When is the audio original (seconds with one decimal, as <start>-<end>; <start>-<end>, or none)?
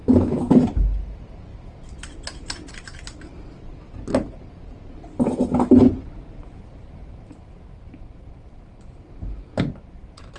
0.5-10.4